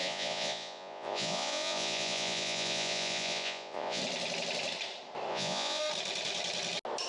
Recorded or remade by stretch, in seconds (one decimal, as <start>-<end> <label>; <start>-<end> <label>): 0.0-4.0 remade; 4.0-5.3 recorded; 5.3-5.8 remade; 5.8-7.1 recorded